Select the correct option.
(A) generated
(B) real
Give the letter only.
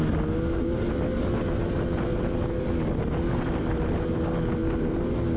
B